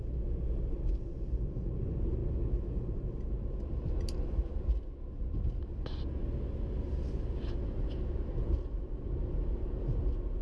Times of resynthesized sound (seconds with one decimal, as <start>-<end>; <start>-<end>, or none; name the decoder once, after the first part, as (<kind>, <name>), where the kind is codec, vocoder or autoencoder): none